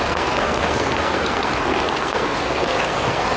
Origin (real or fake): fake